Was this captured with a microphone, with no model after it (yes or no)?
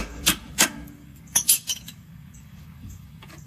no